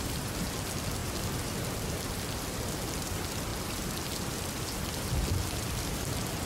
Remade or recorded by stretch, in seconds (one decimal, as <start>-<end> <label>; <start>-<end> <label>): 0.0-3.5 recorded; 3.5-4.6 remade; 4.6-6.5 recorded